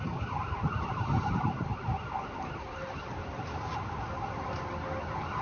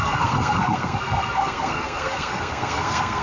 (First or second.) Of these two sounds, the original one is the first